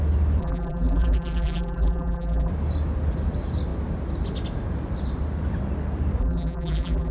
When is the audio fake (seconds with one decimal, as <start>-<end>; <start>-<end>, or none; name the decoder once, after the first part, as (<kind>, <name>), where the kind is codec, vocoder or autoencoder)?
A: 0.4-2.5 (vocoder, BigVGAN v2); 6.2-7.1